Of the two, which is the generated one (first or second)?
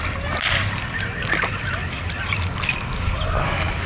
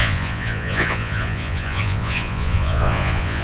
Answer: second